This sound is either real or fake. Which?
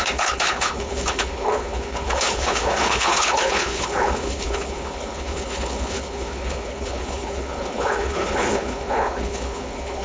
fake